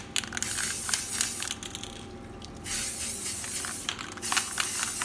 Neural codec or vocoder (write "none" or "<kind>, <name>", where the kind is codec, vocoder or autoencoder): none